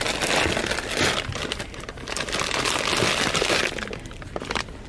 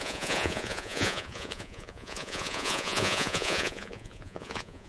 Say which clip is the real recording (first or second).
first